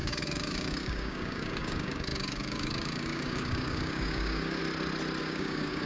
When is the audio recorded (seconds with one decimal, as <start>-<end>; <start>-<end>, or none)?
4.6-5.2